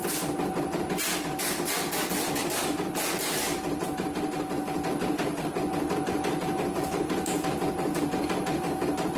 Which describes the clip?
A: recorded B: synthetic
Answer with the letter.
A